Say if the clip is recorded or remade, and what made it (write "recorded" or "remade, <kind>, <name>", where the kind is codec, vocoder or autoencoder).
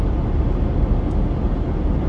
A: recorded